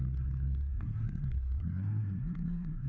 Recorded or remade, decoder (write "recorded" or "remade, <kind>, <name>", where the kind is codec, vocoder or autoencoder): remade, codec, SNAC